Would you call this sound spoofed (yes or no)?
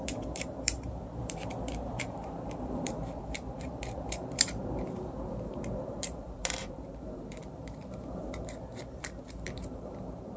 yes